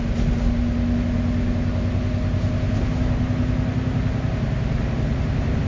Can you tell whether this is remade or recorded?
recorded